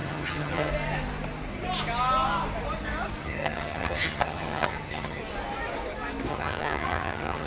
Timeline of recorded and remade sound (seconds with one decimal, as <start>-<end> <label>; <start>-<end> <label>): 0.0-0.7 remade; 0.7-3.2 recorded; 3.2-5.2 remade; 5.2-6.3 recorded; 6.3-7.5 remade